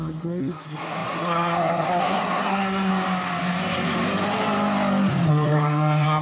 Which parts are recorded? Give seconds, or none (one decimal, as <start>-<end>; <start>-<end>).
2.9-5.3